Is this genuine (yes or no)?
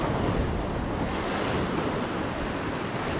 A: yes